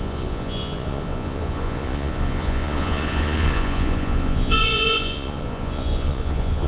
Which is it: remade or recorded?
remade